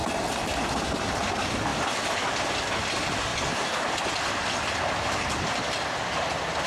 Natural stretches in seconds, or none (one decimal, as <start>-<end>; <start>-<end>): 0.0-1.0; 1.7-2.7; 3.3-4.8

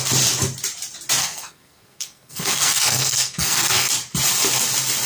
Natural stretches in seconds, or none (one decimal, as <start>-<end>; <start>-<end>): 0.0-1.2; 3.9-5.1

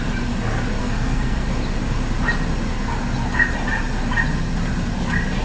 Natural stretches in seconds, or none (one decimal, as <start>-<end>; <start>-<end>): 0.0-0.8; 1.5-5.4

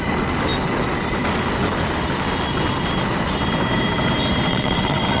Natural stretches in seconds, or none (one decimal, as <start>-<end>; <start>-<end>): 0.0-4.5

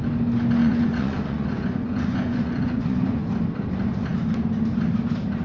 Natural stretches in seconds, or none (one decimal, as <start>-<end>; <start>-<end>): 0.0-0.6; 3.2-5.4